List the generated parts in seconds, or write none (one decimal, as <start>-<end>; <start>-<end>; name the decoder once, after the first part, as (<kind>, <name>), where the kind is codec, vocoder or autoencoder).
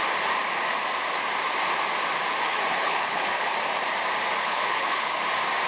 2.4-3.4 (codec, HILCodec); 4.4-5.2